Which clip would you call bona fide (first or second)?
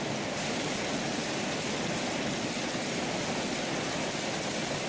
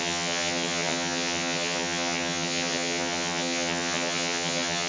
first